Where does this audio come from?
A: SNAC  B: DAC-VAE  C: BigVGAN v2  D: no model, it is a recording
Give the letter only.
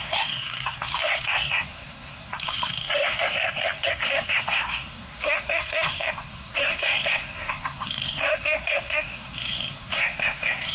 A